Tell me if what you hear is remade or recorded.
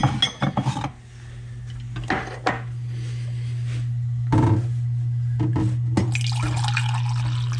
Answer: recorded